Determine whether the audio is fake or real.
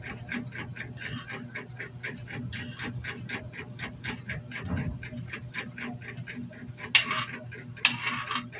real